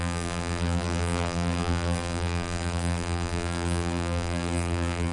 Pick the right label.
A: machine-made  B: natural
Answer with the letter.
A